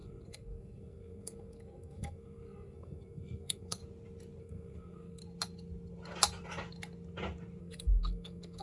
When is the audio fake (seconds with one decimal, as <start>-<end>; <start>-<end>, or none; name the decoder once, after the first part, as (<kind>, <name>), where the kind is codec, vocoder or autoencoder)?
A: 0.0-3.8 (codec, SNAC); 4.4-5.2; 7.6-8.6